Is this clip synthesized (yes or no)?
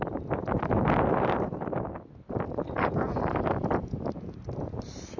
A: no